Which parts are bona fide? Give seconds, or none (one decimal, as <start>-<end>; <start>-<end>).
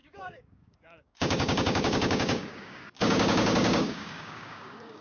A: none